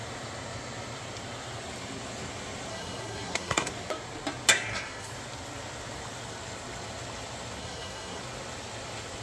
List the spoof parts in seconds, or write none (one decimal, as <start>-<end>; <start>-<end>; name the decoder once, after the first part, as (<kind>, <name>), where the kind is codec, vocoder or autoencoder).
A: 2.7-3.7 (codec, SNAC); 4.5-5.1; 7.6-8.2